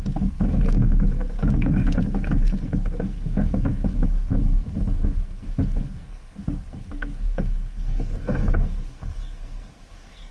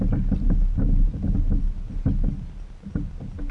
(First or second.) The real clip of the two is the second